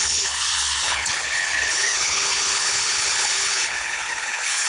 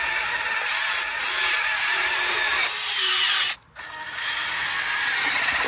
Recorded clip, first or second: second